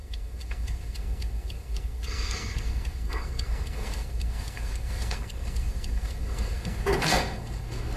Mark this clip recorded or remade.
remade